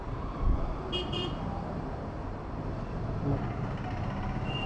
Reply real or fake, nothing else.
fake